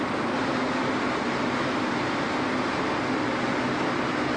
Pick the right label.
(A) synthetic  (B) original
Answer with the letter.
B